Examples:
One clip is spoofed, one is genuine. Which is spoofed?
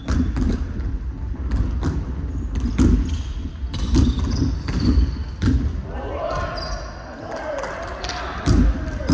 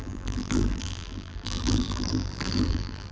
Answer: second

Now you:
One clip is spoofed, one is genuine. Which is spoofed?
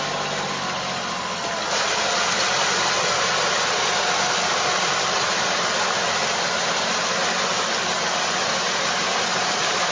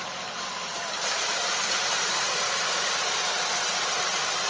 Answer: second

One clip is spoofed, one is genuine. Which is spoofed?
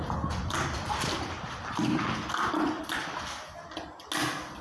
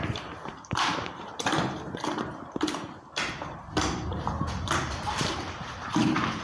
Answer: second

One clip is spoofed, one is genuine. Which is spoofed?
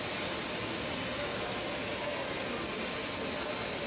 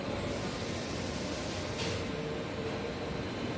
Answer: second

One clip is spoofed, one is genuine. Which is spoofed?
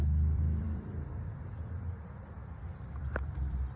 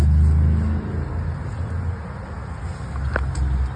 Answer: first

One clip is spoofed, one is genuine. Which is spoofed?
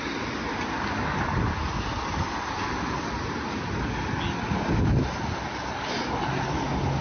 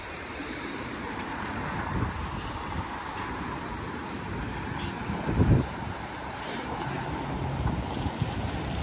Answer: second